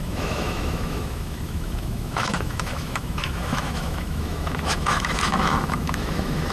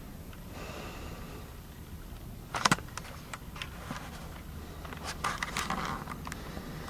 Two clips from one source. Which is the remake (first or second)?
first